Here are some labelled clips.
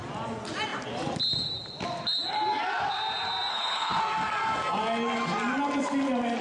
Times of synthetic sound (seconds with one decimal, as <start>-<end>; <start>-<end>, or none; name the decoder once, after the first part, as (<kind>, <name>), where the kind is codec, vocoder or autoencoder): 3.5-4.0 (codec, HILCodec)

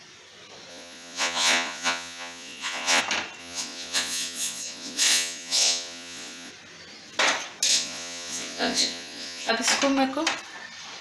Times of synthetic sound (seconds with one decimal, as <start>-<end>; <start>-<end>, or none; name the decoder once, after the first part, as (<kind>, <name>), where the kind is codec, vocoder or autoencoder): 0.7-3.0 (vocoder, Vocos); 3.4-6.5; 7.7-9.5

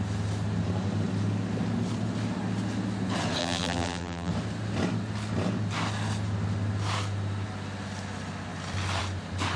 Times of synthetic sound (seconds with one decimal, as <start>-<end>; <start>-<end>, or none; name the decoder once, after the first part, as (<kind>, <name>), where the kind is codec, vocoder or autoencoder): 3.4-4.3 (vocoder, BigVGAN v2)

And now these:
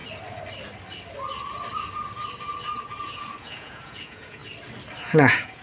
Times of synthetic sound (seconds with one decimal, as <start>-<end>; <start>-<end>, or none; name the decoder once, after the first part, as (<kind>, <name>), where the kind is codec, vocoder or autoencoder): 3.4-4.4 (vocoder, Vocos); 5.0-5.6